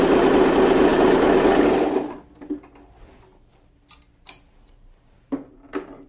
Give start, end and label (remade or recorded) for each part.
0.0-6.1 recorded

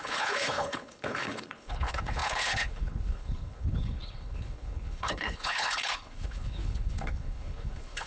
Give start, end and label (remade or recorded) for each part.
0.0-8.1 remade

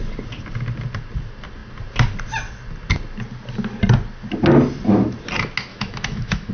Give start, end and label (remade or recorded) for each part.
0.0-5.7 recorded; 5.7-6.5 remade

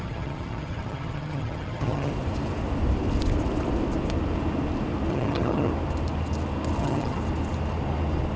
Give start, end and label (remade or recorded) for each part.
0.0-2.1 remade; 2.1-5.1 recorded; 5.1-5.7 remade; 5.7-6.8 recorded; 6.8-7.2 remade; 7.2-8.4 recorded

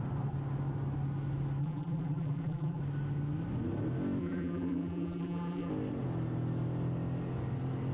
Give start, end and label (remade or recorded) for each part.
0.0-1.6 recorded; 1.6-2.8 remade; 2.8-4.2 recorded; 4.2-5.7 remade; 5.7-7.9 recorded

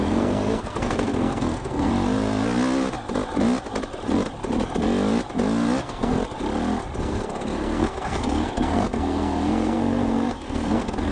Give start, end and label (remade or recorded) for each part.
0.0-1.9 remade; 1.9-5.8 recorded; 5.8-6.2 remade; 6.2-7.0 recorded; 7.0-11.1 remade